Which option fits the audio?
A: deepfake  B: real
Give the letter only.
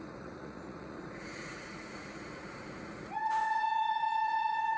A